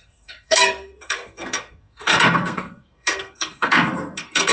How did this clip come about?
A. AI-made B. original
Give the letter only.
A